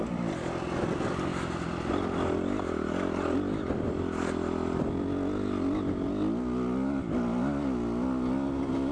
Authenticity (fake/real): real